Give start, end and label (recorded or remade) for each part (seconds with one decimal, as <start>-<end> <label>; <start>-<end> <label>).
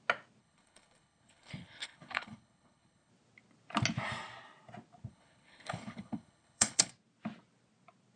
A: 0.0-0.4 recorded; 0.4-3.1 remade; 3.1-5.1 recorded; 5.1-6.9 remade; 6.9-8.2 recorded